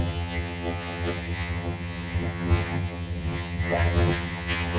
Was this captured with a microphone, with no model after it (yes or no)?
no